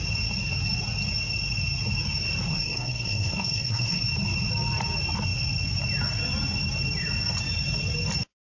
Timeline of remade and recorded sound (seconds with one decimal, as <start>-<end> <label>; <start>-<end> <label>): 0.0-2.5 recorded; 2.5-4.0 remade; 4.0-8.5 recorded